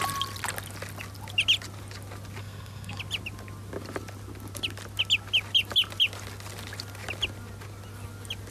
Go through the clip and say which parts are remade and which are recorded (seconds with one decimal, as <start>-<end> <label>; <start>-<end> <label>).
0.0-2.4 recorded; 2.4-3.0 remade; 3.0-8.5 recorded